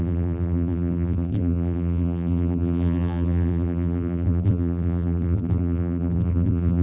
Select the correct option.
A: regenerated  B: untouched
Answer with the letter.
A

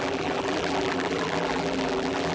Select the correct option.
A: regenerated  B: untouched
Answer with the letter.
A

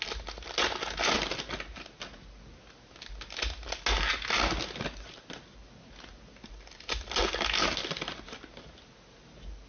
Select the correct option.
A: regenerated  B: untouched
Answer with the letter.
B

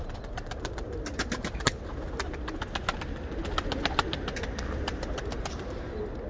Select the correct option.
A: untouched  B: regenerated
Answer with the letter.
A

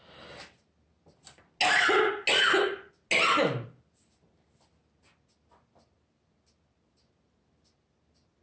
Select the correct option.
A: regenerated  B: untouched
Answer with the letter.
B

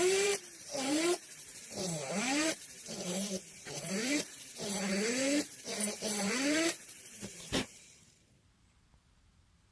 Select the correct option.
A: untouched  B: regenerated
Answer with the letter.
B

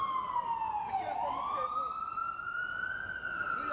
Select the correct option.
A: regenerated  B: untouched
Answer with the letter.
B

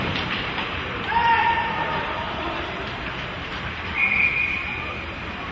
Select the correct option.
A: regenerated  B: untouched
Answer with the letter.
A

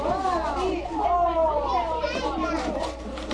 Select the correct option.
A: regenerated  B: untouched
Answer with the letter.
A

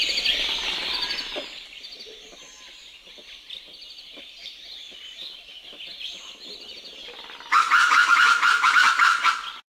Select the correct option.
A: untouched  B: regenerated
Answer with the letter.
B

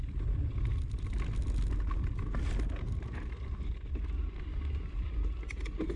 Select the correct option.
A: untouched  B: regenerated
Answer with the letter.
A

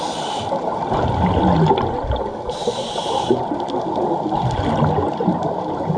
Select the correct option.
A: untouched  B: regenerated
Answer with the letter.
A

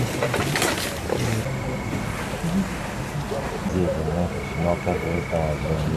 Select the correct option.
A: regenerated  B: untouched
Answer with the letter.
B